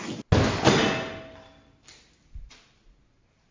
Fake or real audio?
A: real